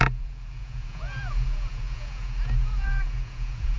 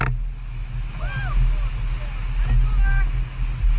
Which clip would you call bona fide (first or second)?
second